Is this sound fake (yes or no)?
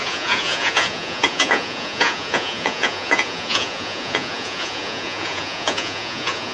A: yes